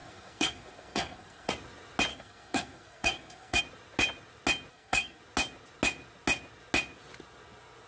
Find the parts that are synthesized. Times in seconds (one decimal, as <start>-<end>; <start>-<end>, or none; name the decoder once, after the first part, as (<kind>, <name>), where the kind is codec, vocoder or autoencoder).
0.0-1.5 (codec, SNAC); 2.1-3.6; 4.7-5.2